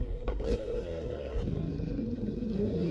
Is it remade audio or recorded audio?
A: remade